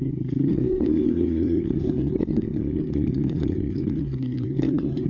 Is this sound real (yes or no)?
no